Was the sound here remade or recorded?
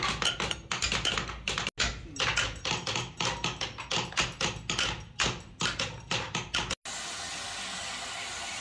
recorded